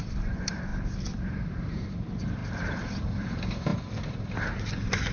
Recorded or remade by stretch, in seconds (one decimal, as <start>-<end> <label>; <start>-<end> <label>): 0.0-0.7 remade; 0.7-1.3 recorded; 1.3-3.7 remade; 3.7-4.6 recorded; 4.6-5.1 remade